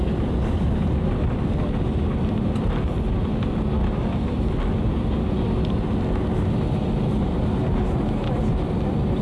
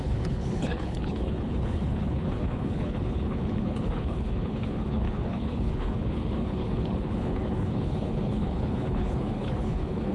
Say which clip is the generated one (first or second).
second